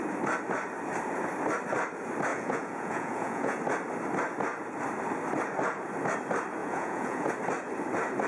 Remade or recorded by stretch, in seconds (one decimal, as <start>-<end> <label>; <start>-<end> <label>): 0.0-2.3 recorded; 2.3-3.6 remade; 3.6-6.6 recorded; 6.6-7.3 remade; 7.3-8.3 recorded